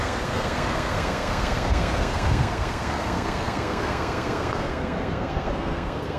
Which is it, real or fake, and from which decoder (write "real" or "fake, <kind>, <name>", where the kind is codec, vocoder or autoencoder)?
fake, codec, SNAC